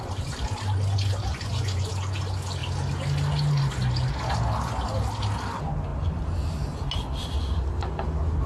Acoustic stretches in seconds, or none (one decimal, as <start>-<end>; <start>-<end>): 0.0-1.3; 1.9-8.5